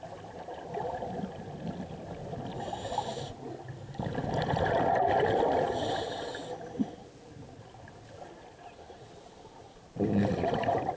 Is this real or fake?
real